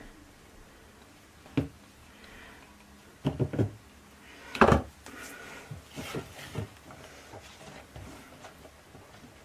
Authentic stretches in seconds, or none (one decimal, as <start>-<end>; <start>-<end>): 0.0-2.0; 2.6-9.4